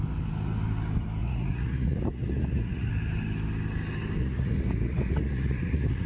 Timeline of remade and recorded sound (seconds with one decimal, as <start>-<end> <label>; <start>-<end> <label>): 0.0-1.2 recorded; 1.2-2.9 remade; 2.9-4.2 recorded; 4.2-6.1 remade

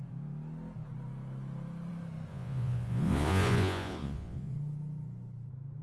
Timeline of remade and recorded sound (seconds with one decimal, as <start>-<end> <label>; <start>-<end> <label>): 0.0-2.3 recorded; 2.3-4.5 remade; 4.5-5.8 recorded

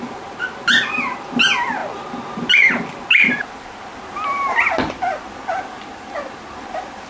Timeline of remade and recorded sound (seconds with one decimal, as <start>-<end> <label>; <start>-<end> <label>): 0.0-7.1 recorded

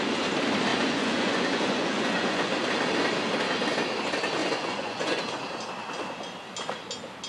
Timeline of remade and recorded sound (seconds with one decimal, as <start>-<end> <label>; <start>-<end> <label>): 0.0-0.7 recorded; 0.7-2.5 remade; 2.5-4.4 recorded; 4.4-5.2 remade; 5.2-7.3 recorded

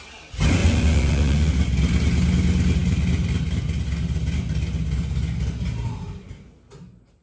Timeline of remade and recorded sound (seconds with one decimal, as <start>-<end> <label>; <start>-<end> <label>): 0.0-0.6 recorded; 0.6-1.5 remade; 1.5-7.2 recorded

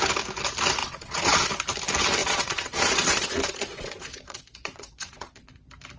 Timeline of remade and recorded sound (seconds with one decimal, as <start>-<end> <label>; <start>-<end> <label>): 0.0-0.8 recorded; 0.8-1.4 remade; 1.4-2.2 recorded; 2.2-5.5 remade; 5.5-6.0 recorded

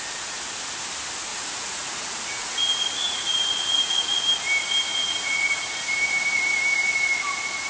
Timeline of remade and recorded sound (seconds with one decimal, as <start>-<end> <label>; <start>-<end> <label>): 0.0-1.3 recorded; 1.3-4.2 remade; 4.2-4.9 recorded; 4.9-5.7 remade; 5.7-7.7 recorded

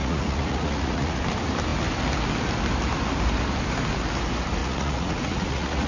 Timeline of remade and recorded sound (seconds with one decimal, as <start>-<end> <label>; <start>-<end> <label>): 0.0-1.2 remade; 1.2-4.6 recorded; 4.6-5.9 remade